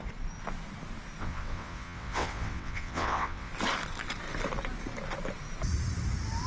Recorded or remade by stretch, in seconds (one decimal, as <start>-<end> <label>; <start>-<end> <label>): 0.0-1.2 recorded; 1.2-3.5 remade; 3.5-6.5 recorded